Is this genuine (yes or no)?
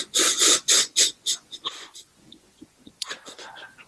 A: no